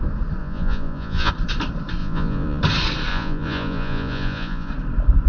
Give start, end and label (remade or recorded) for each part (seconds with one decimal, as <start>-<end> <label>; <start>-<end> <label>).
0.0-0.4 recorded; 0.4-1.3 remade; 1.3-2.0 recorded; 2.0-2.6 remade; 2.6-3.1 recorded; 3.1-4.7 remade; 4.7-5.3 recorded